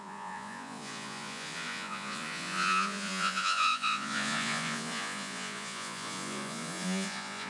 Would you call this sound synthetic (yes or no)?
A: yes